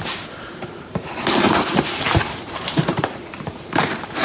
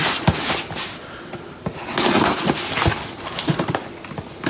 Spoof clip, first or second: first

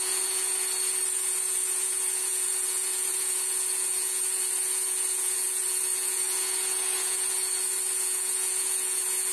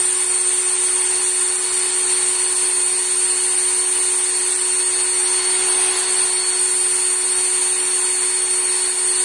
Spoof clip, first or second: first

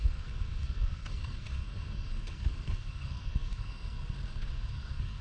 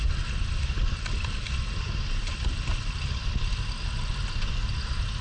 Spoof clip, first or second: first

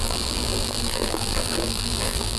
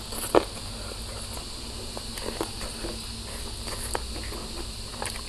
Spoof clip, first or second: first